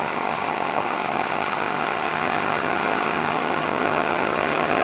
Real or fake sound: fake